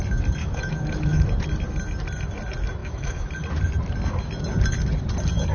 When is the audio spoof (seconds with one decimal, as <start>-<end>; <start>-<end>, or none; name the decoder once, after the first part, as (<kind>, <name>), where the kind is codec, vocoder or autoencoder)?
0.4-1.2 (autoencoder, DAC-VAE); 2.8-3.3